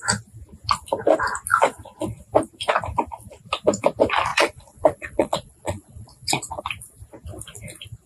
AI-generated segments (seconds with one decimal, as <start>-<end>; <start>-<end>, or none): 4.3-6.6